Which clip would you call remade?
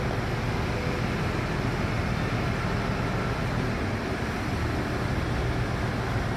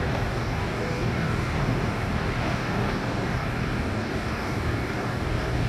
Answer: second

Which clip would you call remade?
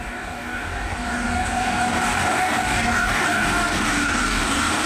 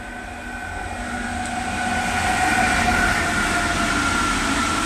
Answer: first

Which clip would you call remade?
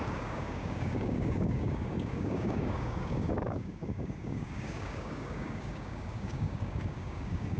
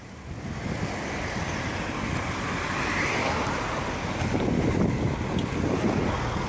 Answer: first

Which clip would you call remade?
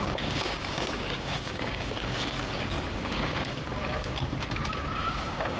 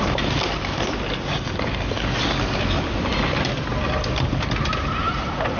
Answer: first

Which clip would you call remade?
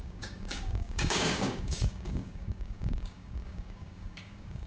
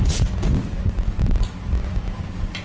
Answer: first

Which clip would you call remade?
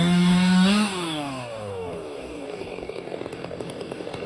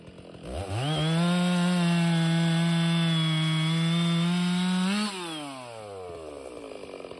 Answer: first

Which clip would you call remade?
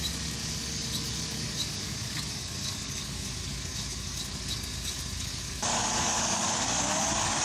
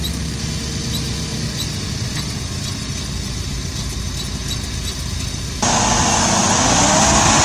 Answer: first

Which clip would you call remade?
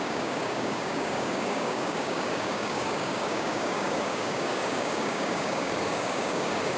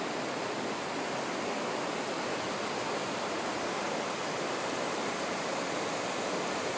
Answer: first